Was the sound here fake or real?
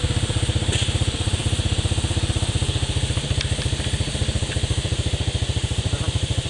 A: fake